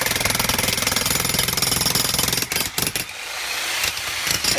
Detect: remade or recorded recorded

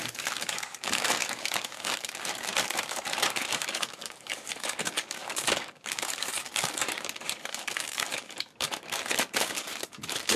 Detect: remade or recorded remade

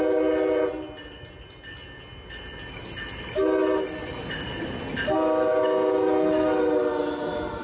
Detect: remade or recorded recorded